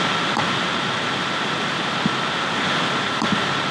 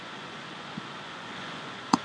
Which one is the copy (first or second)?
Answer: second